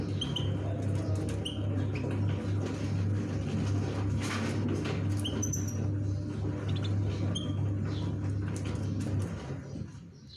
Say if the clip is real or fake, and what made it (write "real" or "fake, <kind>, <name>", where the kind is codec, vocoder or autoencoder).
real